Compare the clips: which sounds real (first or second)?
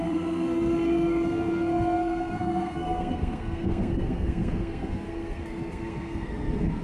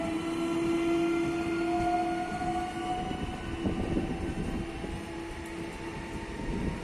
second